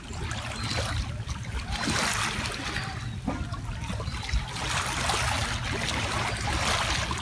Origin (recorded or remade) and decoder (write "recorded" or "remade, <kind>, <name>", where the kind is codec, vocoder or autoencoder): recorded